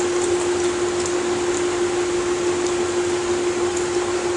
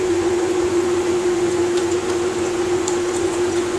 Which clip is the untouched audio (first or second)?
first